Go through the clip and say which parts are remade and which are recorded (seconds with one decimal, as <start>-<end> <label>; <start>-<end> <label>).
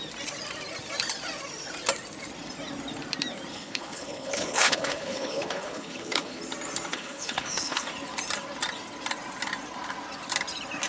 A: 0.0-3.5 recorded; 3.5-6.4 remade; 6.4-6.9 recorded; 6.9-7.9 remade; 7.9-10.9 recorded